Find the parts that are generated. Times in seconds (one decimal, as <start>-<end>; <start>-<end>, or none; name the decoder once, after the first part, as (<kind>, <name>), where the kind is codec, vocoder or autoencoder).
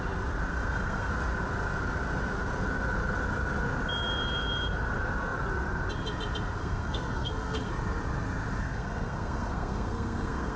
0.5-1.1 (codec, SNAC); 6.6-7.7; 8.6-10.6